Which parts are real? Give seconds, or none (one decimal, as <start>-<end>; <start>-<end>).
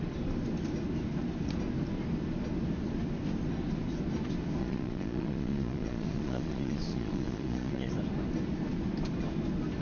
0.0-4.6; 7.9-9.8